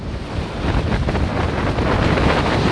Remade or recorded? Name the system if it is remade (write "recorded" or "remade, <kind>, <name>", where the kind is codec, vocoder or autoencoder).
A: recorded